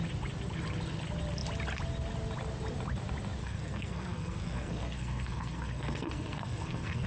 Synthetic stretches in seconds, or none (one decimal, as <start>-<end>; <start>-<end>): 3.4-7.1